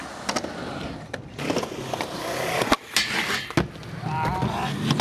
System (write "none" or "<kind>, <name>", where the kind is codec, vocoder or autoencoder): none